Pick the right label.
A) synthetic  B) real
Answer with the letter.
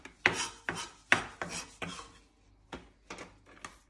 B